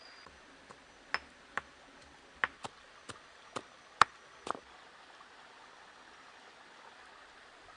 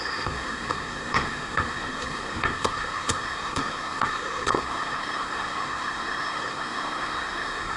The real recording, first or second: first